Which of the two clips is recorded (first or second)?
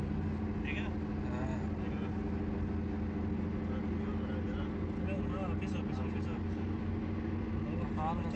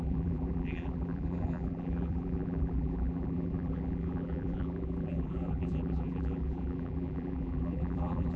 first